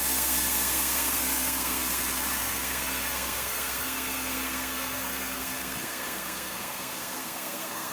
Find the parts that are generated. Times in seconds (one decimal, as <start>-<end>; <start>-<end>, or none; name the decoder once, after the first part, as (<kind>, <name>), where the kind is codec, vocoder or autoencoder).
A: 0.0-7.9 (codec, SNAC)